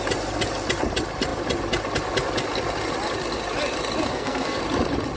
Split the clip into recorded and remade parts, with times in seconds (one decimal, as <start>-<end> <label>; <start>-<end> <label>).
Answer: 0.0-4.1 recorded; 4.1-4.6 remade; 4.6-5.2 recorded